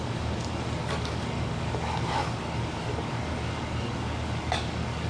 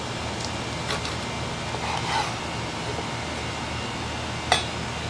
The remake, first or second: first